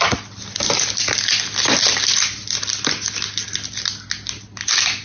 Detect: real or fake real